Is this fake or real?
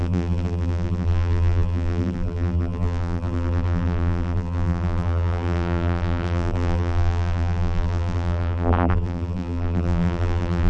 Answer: fake